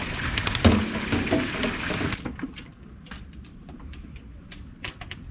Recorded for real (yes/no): yes